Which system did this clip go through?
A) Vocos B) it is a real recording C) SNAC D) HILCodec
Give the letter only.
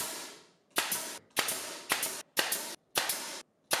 B